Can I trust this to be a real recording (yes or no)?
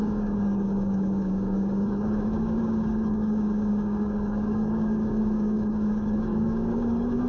no